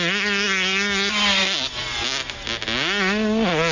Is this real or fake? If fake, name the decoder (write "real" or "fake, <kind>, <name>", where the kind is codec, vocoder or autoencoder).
real